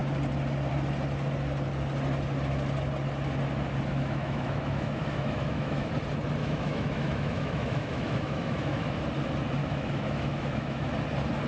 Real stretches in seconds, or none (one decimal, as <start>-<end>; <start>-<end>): 0.0-3.9; 5.9-6.4; 9.0-9.6; 10.9-11.5